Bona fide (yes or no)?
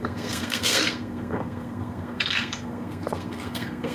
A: no